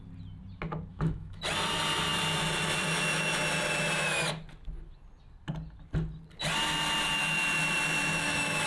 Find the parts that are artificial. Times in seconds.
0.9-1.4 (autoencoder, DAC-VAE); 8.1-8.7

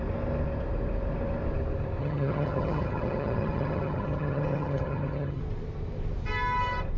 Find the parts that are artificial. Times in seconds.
2.0-5.4 (vocoder, HiFi-GAN)

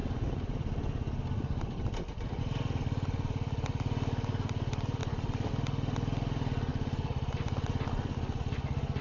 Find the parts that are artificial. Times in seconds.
5.0-5.5 (vocoder, BigVGAN v2); 6.7-8.4

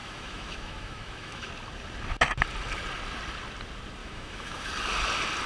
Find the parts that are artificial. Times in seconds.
0.0-1.5 (autoencoder, DAC-VAE); 4.0-4.7

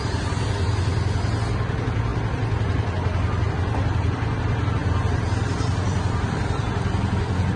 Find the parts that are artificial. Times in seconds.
4.8-6.6 (vocoder, BigVGAN v2)

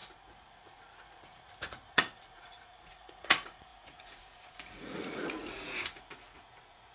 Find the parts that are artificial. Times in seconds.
0.0-6.9 (vocoder, Vocos)

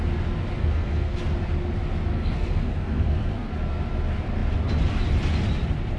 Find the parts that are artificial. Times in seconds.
0.6-1.2 (codec, SNAC); 2.1-3.5